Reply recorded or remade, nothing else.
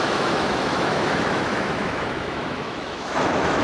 remade